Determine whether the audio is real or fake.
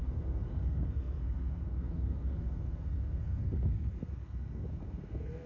fake